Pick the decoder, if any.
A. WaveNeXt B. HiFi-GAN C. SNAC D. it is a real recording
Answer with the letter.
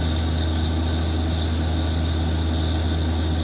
D